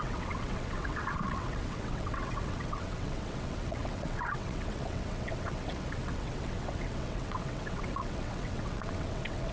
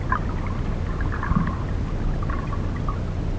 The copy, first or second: first